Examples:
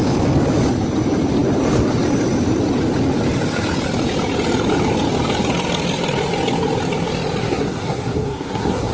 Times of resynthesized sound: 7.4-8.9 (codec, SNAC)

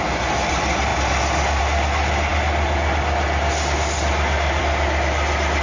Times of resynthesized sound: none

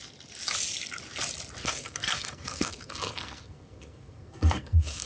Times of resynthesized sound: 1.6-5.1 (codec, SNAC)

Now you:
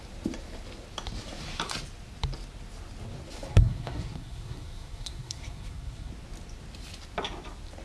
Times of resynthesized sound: 3.5-6.1 (codec, SNAC)

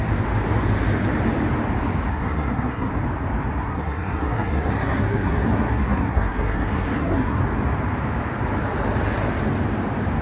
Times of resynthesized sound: 2.1-2.9 (codec, SNAC); 3.6-7.4

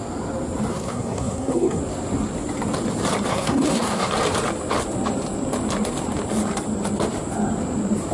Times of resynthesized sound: 0.7-1.8 (codec, SNAC); 3.3-4.1

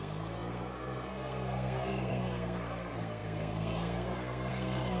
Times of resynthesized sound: 0.0-5.0 (codec, SNAC)